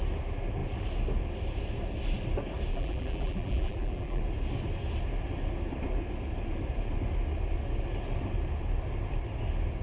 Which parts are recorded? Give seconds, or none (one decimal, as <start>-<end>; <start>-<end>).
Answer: 0.0-2.7; 4.2-9.8